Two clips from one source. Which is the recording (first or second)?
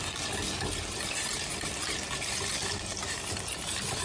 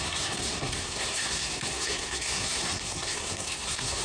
first